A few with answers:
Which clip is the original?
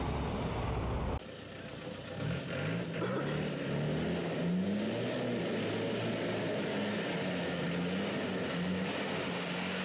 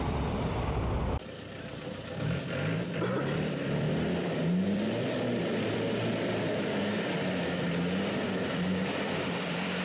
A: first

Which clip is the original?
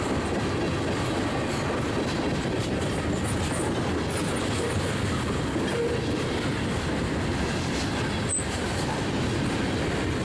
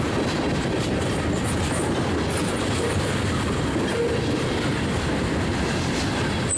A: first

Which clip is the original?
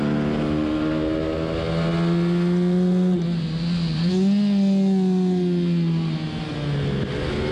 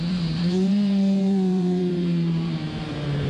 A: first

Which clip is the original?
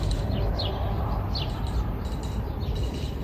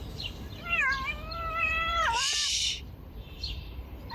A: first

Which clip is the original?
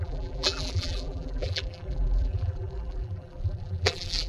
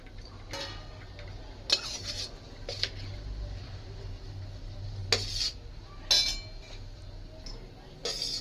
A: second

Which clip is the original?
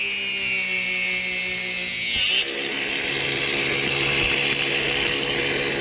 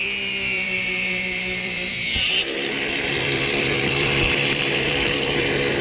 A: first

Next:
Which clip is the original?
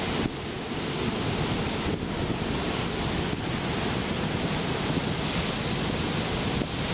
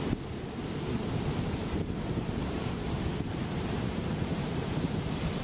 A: first